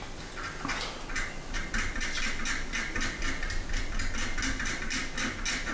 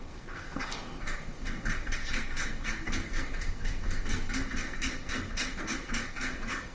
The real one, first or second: first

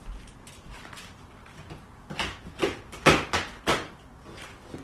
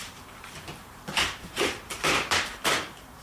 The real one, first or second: first